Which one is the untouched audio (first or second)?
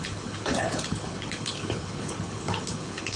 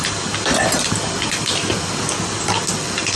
second